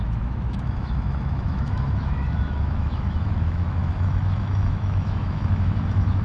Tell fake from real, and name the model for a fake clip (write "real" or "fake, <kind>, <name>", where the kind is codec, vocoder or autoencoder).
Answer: fake, autoencoder, DAC-VAE